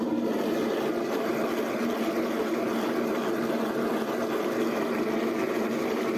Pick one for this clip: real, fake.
real